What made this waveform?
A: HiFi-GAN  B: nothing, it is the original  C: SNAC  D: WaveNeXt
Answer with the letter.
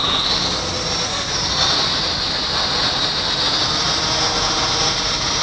B